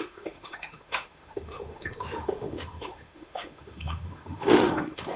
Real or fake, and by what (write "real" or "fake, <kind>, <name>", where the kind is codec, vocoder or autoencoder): fake, autoencoder, DAC-VAE